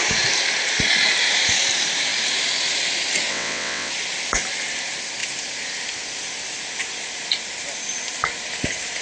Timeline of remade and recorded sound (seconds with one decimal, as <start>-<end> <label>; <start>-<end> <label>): 0.0-3.3 recorded; 3.3-3.9 remade; 3.9-9.0 recorded